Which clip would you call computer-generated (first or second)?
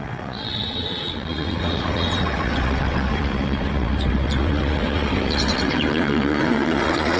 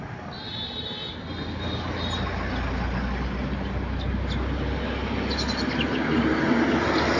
first